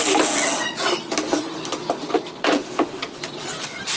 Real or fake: real